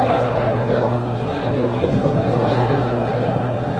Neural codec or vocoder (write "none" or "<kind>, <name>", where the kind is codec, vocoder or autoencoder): codec, SNAC